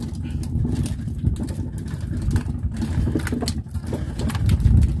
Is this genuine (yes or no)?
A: yes